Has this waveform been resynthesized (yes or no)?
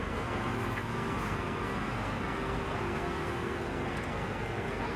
yes